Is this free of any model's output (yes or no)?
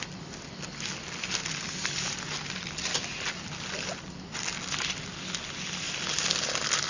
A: yes